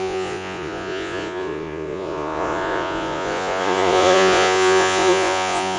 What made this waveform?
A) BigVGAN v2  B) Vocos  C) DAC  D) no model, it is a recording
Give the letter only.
B